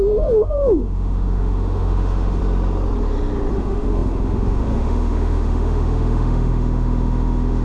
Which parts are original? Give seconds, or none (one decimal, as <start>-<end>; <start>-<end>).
2.4-3.5

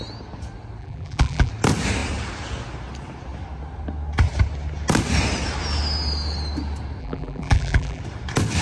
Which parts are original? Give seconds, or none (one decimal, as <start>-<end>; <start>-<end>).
0.0-0.8; 1.5-7.0; 8.0-8.6